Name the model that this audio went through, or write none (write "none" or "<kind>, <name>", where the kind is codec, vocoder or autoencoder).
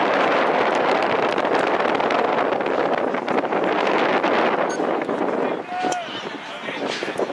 none